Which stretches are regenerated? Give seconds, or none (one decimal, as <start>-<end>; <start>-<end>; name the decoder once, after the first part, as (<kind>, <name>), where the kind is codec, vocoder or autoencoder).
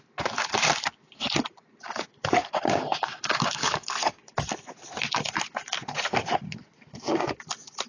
2.5-3.7 (codec, DAC)